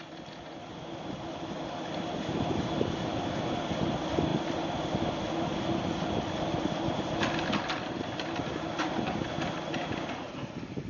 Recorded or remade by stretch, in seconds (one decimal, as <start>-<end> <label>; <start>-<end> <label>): 0.0-10.9 recorded